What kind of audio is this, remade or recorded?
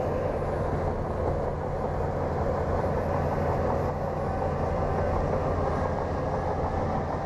recorded